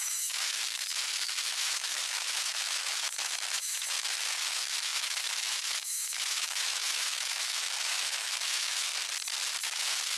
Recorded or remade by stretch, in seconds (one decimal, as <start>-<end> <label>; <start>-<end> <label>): 0.0-8.9 remade; 8.9-9.6 recorded; 9.6-10.2 remade